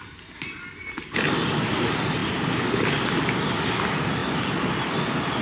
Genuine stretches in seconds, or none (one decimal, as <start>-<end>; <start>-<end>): 0.0-5.4